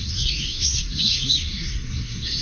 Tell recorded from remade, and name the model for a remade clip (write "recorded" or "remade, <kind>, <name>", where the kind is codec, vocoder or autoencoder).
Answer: remade, codec, SNAC